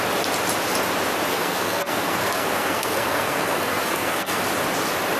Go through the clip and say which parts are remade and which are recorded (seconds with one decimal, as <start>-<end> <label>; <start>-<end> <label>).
0.0-1.3 recorded; 1.3-4.4 remade; 4.4-5.2 recorded